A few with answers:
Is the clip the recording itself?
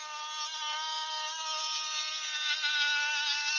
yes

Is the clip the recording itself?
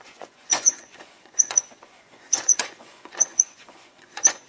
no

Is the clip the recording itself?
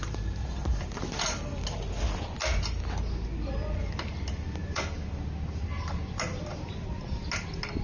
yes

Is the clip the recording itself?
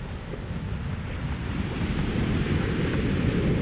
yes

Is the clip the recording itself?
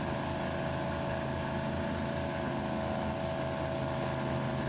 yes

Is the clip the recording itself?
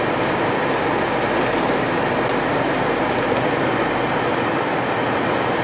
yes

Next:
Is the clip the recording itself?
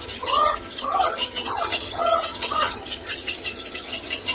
no